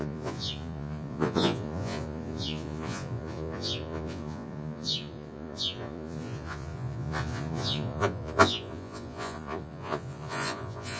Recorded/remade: remade